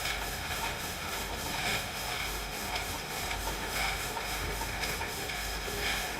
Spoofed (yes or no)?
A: yes